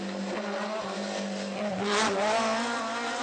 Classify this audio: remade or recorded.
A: recorded